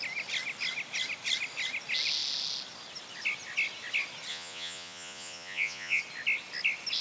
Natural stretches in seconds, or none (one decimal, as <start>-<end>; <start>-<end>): 0.0-4.3; 6.0-7.0